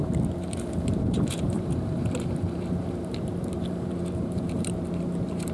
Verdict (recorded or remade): remade